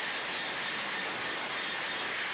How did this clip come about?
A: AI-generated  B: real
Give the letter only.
B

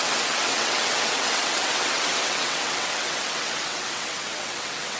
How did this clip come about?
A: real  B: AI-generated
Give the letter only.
B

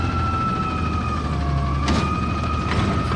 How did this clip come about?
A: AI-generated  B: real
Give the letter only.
B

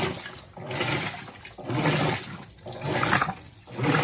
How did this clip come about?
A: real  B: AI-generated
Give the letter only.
A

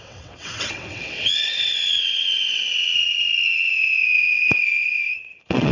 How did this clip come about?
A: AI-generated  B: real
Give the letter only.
A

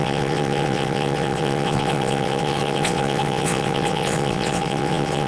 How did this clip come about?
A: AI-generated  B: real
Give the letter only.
A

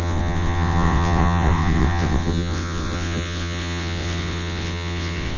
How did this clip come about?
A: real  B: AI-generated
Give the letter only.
B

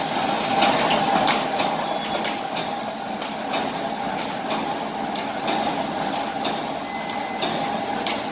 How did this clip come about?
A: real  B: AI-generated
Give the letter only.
A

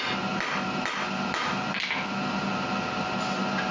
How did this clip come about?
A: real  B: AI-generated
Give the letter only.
A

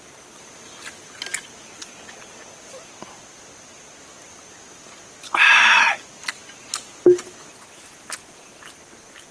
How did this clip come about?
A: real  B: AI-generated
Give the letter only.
A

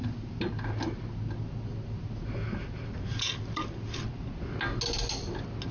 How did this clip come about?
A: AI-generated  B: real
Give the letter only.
B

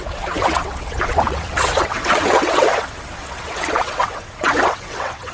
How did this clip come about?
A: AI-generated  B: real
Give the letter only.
A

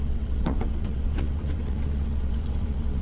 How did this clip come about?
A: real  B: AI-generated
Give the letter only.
B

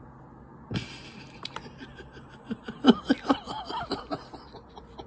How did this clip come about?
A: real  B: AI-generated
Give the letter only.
A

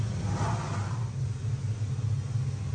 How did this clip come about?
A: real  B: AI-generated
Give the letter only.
A